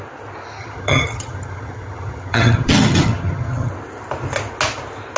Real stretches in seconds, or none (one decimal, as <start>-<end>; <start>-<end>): 0.0-0.6; 3.7-5.2